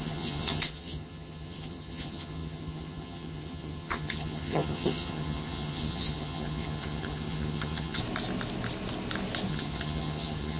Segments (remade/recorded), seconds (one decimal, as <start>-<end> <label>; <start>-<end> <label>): 0.0-8.0 remade; 8.0-9.5 recorded; 9.5-10.6 remade